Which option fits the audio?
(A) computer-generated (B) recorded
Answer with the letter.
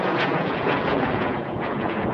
A